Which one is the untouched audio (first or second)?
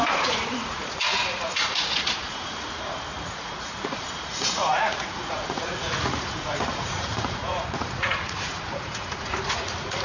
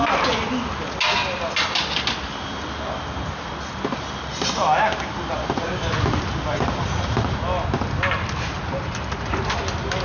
second